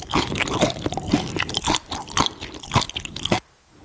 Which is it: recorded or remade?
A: recorded